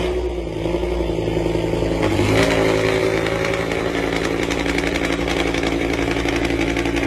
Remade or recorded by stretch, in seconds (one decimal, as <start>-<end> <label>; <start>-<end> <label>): 0.0-3.0 recorded; 3.0-6.3 remade; 6.3-7.1 recorded